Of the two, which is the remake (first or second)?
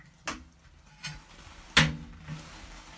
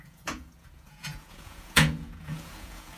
second